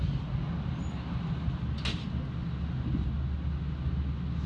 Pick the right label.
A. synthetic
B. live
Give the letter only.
B